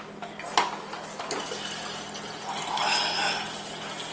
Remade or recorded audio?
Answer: recorded